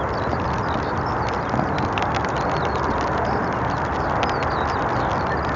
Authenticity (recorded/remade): recorded